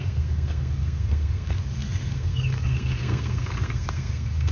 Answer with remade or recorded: remade